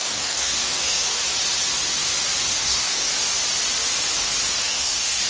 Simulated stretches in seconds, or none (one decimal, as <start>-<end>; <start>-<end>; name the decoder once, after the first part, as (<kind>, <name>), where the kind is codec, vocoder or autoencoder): 0.0-1.2 (codec, DAC); 2.4-3.1; 4.6-5.3